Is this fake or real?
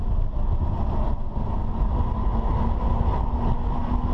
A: real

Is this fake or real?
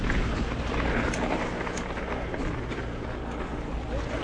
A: real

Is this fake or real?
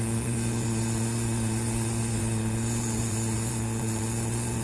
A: fake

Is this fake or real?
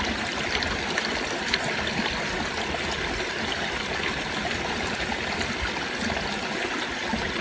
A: real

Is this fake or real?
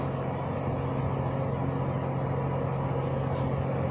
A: real